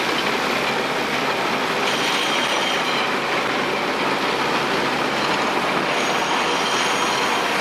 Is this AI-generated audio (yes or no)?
no